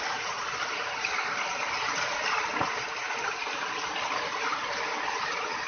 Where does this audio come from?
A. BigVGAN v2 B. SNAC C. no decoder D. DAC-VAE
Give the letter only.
C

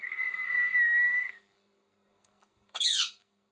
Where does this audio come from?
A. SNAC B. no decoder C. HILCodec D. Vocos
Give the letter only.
A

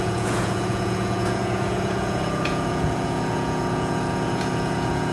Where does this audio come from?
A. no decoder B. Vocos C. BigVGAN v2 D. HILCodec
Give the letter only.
B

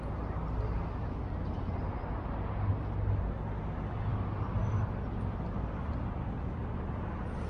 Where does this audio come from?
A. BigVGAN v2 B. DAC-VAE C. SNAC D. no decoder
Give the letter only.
D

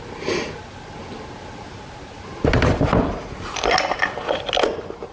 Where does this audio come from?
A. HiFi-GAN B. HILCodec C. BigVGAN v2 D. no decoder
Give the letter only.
D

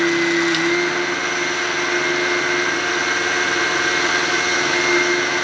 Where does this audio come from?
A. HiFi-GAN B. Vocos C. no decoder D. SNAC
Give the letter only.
C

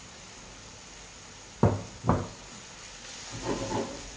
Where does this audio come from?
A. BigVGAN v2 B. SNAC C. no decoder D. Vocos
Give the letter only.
C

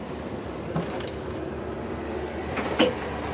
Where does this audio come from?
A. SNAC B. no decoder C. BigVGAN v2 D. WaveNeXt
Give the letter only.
B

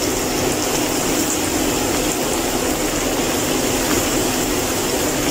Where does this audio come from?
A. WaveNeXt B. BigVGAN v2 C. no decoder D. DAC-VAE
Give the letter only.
C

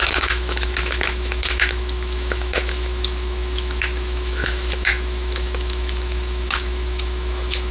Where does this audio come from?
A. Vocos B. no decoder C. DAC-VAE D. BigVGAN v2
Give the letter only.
C